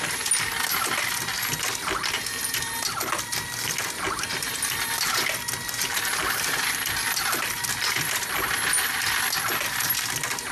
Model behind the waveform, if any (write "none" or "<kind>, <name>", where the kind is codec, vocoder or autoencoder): none